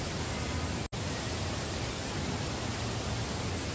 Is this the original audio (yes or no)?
yes